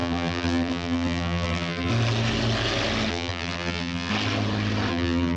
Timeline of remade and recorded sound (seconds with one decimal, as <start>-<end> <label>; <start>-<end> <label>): 0.0-1.9 remade; 1.9-3.1 recorded; 3.1-4.1 remade; 4.1-4.9 recorded; 4.9-5.4 remade